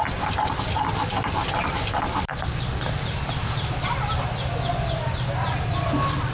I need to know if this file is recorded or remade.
recorded